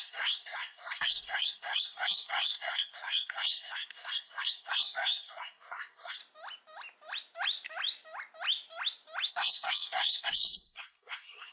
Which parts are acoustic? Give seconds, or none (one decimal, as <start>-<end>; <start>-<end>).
6.2-9.3